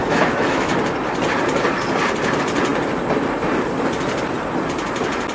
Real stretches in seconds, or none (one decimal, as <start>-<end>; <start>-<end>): 0.7-5.3